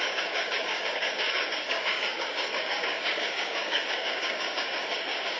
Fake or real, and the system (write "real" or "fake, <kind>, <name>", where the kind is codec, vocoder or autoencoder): fake, codec, DAC